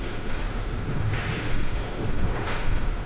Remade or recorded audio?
remade